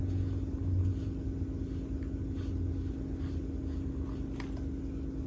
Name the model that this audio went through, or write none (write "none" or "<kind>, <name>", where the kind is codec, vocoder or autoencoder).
none